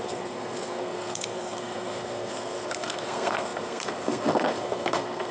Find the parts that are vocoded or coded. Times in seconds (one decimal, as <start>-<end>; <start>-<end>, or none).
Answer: 0.0-5.3